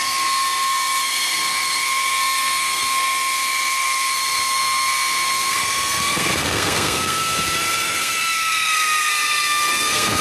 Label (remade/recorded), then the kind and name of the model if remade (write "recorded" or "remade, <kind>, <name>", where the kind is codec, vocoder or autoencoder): remade, codec, SNAC